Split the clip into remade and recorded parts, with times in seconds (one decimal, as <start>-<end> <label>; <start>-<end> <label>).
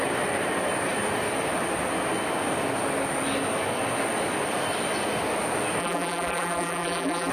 0.0-5.8 recorded; 5.8-7.3 remade